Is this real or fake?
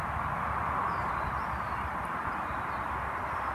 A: real